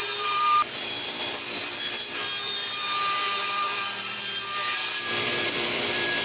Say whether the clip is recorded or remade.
remade